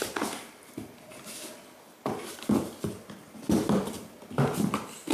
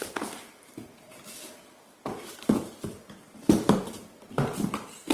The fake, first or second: second